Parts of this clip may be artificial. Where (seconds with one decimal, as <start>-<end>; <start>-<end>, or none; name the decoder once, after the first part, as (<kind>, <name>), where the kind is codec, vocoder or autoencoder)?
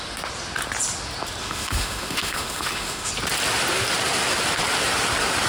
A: 1.4-3.1 (autoencoder, DAC-VAE)